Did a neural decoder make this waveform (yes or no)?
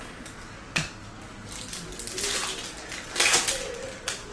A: no